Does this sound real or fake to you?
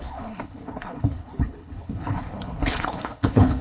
fake